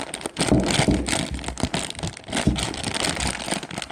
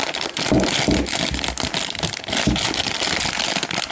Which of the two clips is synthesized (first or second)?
second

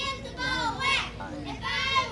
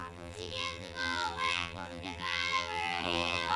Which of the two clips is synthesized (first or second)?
second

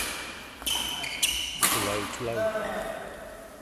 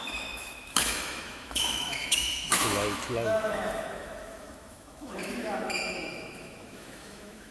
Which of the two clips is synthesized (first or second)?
second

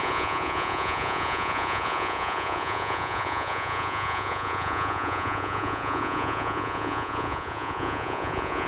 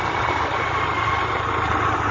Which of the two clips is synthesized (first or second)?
first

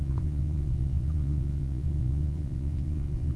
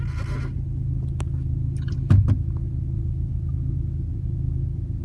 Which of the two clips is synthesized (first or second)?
first